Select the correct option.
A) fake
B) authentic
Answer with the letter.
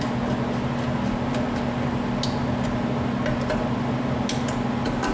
B